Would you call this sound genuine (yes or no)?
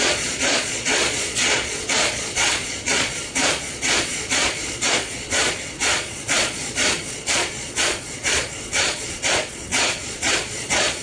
no